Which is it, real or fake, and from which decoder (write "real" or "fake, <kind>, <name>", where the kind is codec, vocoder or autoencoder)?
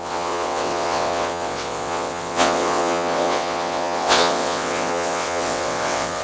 fake, vocoder, WaveNeXt